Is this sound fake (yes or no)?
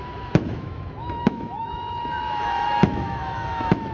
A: yes